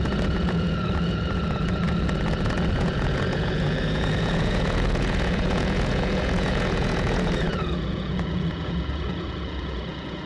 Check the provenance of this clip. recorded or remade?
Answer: remade